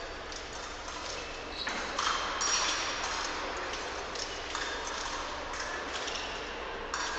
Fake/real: real